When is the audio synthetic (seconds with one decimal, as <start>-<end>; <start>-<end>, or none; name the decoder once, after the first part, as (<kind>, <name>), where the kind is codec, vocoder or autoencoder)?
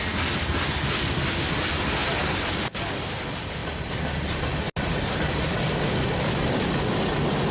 none